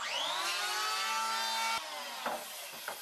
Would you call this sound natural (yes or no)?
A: yes